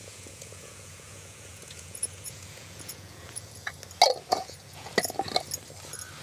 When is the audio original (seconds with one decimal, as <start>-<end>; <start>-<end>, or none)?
3.7-4.3; 4.9-6.2